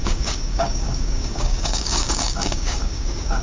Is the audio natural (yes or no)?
no